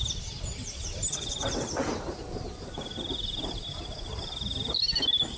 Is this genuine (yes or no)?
yes